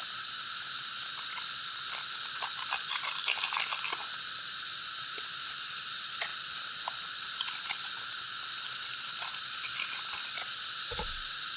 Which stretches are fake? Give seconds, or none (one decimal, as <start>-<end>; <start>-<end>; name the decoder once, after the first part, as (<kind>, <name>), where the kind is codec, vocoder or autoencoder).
none